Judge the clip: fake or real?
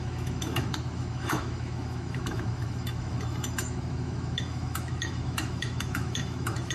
fake